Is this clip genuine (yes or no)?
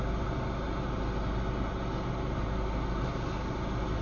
yes